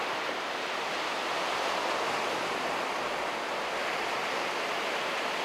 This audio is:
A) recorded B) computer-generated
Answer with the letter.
A